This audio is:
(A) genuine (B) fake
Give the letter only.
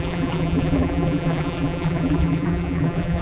B